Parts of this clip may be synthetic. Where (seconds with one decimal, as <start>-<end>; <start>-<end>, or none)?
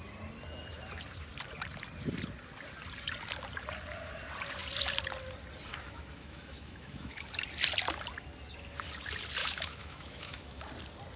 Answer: 5.7-7.3; 9.4-10.6